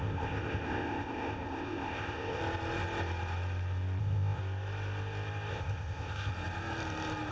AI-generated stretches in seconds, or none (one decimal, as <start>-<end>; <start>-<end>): 0.0-2.4; 4.0-4.4; 5.5-6.3